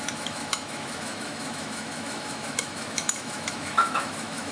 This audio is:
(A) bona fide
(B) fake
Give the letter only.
B